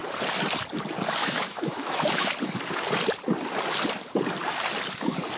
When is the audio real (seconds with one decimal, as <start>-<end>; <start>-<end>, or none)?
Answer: 0.0-1.2; 2.3-5.4